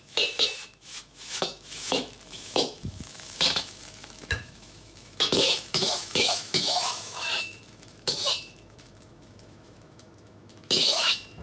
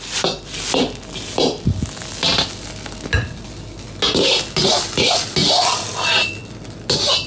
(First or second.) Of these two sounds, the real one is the second